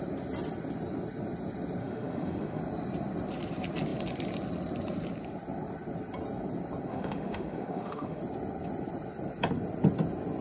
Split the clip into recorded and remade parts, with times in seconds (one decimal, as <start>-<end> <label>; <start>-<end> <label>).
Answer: 0.0-1.8 recorded; 1.8-2.6 remade; 2.6-6.9 recorded; 6.9-8.2 remade; 8.2-10.4 recorded